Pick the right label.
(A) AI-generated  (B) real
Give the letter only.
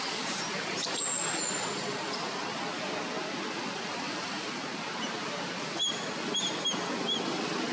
B